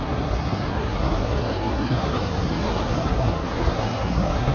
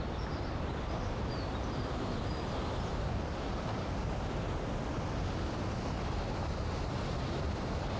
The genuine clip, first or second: second